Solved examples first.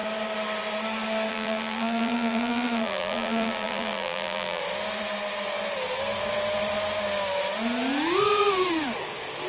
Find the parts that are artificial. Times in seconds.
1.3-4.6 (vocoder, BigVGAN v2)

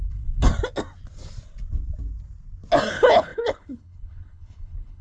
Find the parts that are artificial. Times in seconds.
0.0-0.5 (codec, HILCodec); 2.9-5.0

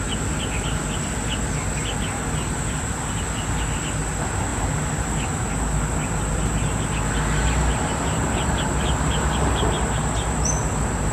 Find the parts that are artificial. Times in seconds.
none